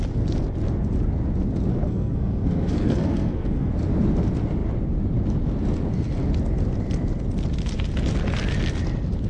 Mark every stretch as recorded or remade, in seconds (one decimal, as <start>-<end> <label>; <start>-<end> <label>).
0.0-1.7 recorded; 1.7-3.7 remade; 3.7-9.3 recorded